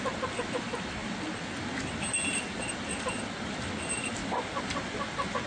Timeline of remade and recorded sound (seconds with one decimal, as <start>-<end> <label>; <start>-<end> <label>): 0.0-5.5 recorded